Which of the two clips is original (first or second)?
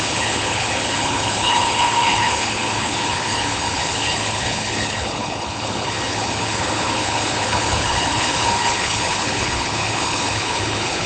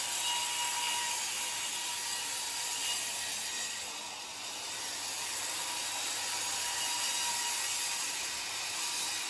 second